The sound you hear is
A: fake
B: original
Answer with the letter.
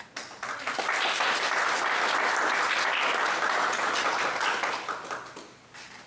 B